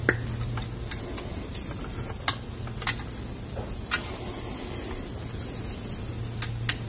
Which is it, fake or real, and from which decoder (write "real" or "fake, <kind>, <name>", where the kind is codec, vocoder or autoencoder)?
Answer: real